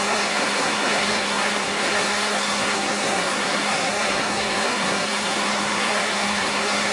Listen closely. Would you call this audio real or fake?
fake